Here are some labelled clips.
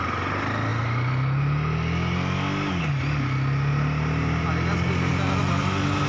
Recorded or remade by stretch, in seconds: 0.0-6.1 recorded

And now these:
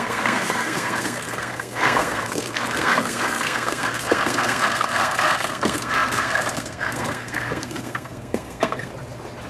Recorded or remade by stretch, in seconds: 0.0-8.9 remade; 8.9-9.5 recorded

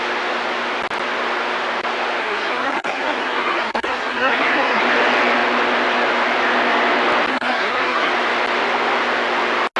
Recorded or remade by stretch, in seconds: 0.0-2.2 recorded; 2.2-4.8 remade; 4.8-7.3 recorded; 7.3-8.1 remade; 8.1-9.8 recorded

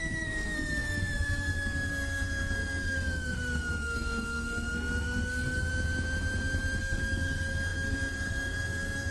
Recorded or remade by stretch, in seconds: 0.0-5.7 remade; 5.7-6.8 recorded; 6.8-9.1 remade

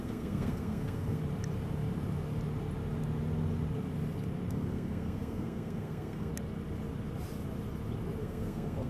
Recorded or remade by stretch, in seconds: 0.0-1.2 remade; 1.2-4.5 recorded; 4.5-6.3 remade; 6.3-8.2 recorded; 8.2-8.9 remade

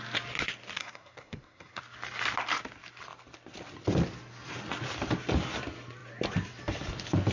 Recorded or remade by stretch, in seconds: 0.0-0.8 recorded; 0.8-1.8 remade; 1.8-7.3 recorded

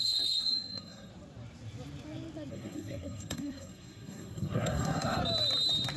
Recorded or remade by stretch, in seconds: 0.0-1.1 remade; 1.1-2.5 recorded; 2.5-5.2 remade; 5.2-6.0 recorded